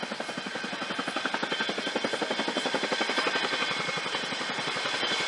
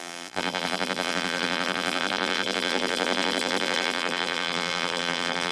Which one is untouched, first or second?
first